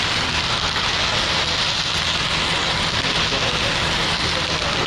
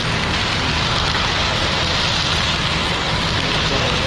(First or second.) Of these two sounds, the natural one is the first